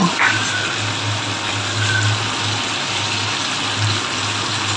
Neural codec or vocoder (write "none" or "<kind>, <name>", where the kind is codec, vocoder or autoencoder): none